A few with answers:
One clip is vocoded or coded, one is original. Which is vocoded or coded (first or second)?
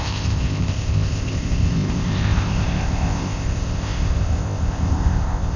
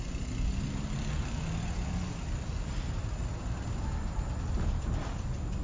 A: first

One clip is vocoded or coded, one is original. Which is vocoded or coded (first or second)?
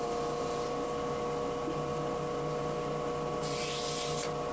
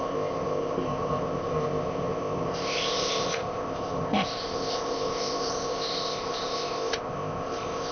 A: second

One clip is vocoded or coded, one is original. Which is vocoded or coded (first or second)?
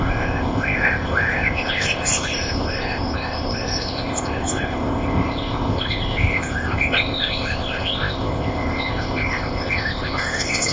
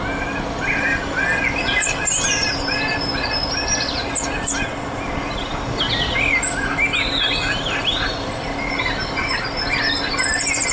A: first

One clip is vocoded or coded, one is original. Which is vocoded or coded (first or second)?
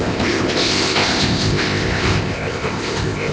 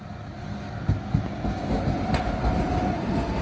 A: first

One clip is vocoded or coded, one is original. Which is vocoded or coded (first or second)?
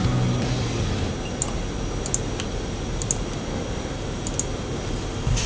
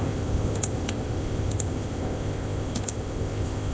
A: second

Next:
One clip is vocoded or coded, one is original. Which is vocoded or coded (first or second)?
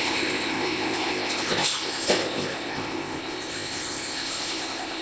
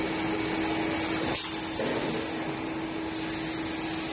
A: first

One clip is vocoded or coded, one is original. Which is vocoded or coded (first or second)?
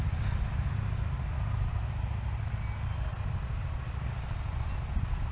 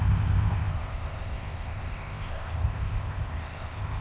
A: second